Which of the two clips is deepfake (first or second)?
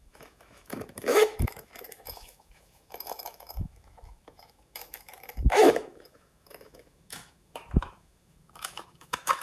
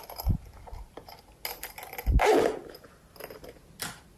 first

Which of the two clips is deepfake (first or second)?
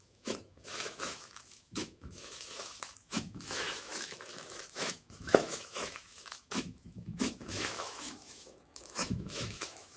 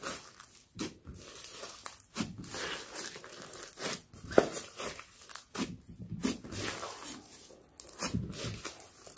first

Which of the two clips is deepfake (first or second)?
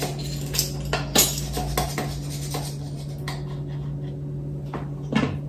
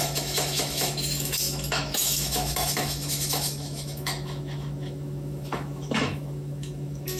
second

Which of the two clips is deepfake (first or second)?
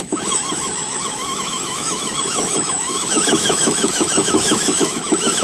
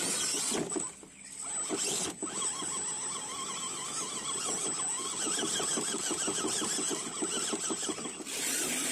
first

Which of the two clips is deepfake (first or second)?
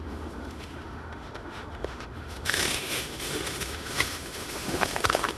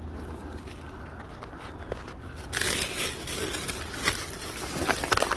first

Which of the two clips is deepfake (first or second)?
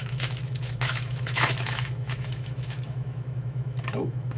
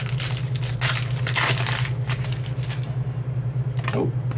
first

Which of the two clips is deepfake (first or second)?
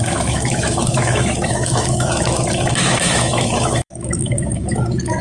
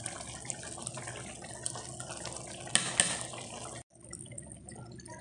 first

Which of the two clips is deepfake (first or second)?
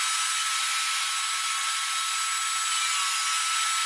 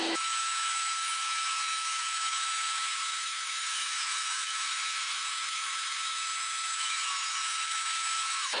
second